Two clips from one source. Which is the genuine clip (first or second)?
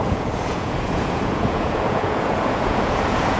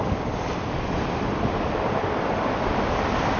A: second